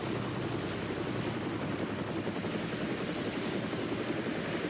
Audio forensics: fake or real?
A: real